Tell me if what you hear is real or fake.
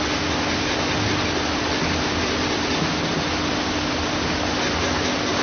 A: real